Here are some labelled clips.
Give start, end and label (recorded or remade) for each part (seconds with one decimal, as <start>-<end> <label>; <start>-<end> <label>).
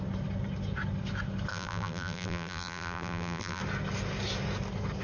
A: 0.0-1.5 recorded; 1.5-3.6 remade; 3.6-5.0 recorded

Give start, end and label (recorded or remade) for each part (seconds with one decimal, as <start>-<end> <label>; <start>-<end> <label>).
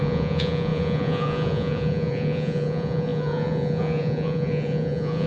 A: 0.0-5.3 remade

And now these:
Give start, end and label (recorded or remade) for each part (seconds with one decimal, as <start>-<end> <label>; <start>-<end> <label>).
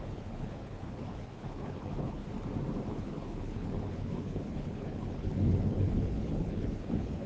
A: 0.0-2.2 remade; 2.2-2.9 recorded; 2.9-7.3 remade